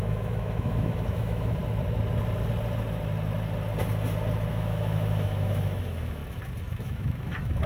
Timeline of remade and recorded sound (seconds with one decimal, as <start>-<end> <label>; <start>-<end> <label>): 0.0-1.6 remade; 1.6-4.5 recorded; 4.5-6.2 remade; 6.2-6.7 recorded; 6.7-7.7 remade

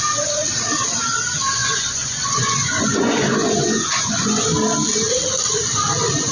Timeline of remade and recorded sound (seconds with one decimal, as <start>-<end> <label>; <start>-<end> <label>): 0.0-1.6 recorded; 1.6-4.4 remade; 4.4-6.3 recorded